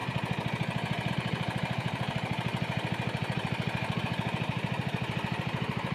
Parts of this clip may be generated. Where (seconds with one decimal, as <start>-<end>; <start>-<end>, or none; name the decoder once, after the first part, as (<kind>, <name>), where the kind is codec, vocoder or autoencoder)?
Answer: 1.1-5.9 (vocoder, BigVGAN v2)